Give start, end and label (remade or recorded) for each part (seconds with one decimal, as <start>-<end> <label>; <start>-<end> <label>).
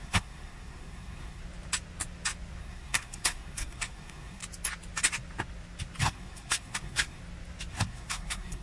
0.0-1.4 remade; 1.4-2.6 recorded; 2.6-4.4 remade; 4.4-6.0 recorded; 6.0-7.2 remade; 7.2-7.7 recorded; 7.7-8.6 remade